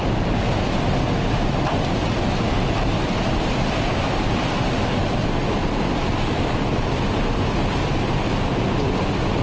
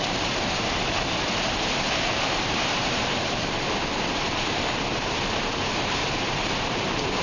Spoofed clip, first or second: second